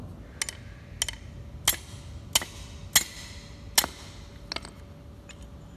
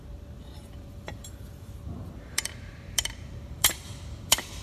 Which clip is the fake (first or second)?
second